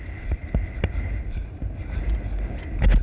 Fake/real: real